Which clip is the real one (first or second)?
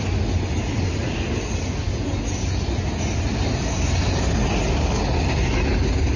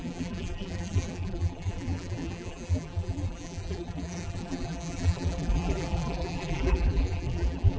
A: first